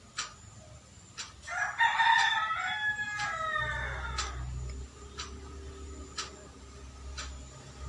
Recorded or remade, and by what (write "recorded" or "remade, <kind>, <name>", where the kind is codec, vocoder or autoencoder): recorded